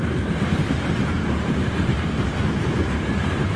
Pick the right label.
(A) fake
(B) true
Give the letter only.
A